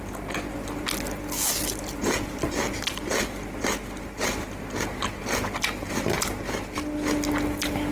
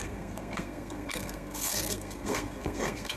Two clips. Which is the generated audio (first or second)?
second